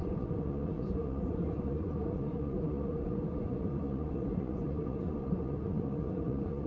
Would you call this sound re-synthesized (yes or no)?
yes